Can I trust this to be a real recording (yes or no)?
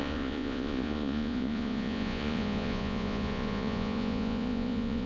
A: no